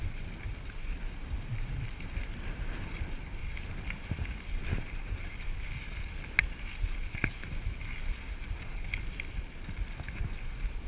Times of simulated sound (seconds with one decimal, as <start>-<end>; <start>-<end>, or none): 1.5-3.4